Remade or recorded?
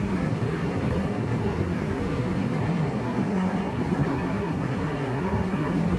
remade